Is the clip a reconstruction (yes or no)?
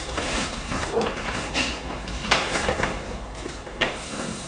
yes